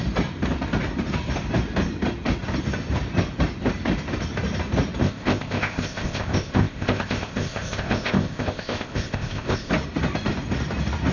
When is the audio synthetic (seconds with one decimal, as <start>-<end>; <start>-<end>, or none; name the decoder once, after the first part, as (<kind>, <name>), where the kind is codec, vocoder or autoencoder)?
5.0-9.7 (codec, ZipCodec)